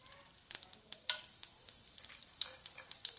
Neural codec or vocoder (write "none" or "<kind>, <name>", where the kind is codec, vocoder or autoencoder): none